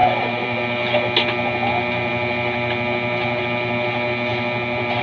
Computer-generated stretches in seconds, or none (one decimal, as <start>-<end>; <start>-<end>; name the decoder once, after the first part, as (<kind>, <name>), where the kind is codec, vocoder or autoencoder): 0.0-0.6 (vocoder, BigVGAN v2)